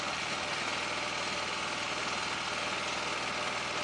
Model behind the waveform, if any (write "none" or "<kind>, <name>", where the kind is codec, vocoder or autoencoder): none